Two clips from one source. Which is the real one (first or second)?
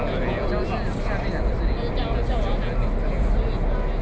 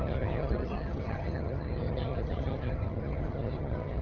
first